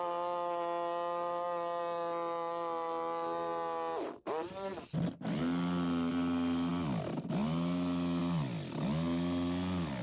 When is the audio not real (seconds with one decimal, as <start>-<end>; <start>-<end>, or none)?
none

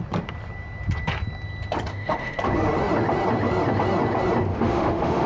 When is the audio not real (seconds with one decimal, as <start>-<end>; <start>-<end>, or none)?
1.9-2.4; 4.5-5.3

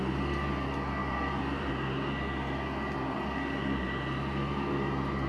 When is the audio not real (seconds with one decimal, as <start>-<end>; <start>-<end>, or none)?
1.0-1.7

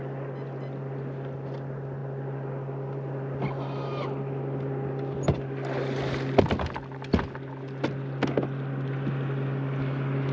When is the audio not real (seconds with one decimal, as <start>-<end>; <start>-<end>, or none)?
none

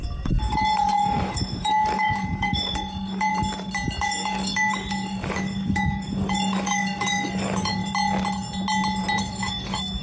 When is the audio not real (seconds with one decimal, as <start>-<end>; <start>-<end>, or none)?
0.0-3.3; 4.0-7.8; 9.2-10.0

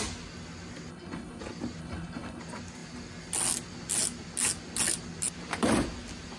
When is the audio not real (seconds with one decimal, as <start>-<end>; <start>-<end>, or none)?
0.9-1.4; 1.8-2.4